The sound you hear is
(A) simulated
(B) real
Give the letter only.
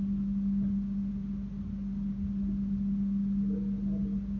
B